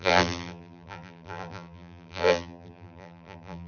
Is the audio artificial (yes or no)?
yes